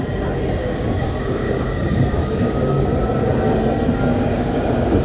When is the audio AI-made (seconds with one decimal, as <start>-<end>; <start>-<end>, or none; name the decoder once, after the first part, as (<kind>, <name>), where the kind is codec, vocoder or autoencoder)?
0.6-2.9 (codec, DAC); 4.1-5.0